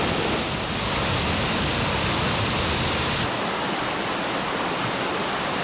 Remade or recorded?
recorded